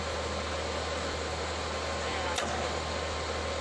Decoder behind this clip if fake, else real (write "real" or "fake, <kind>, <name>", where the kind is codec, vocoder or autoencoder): real